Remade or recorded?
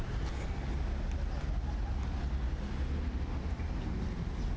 recorded